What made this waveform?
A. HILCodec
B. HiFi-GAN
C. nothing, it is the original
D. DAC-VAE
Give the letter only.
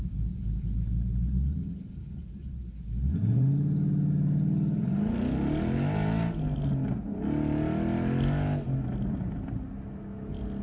C